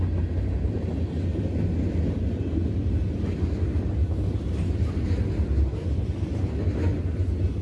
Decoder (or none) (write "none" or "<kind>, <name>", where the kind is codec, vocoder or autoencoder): none